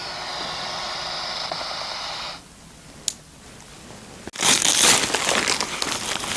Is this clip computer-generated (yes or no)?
no